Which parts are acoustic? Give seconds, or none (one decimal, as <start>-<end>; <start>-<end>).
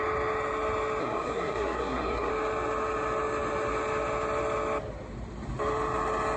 0.0-1.0; 2.3-6.4